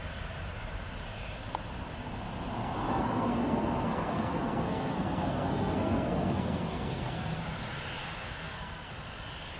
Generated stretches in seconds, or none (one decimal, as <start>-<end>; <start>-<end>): 2.6-7.4; 8.0-8.9